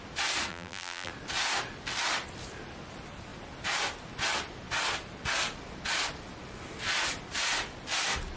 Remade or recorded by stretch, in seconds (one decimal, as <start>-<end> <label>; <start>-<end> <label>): 0.0-0.5 recorded; 0.5-1.1 remade; 1.1-8.4 recorded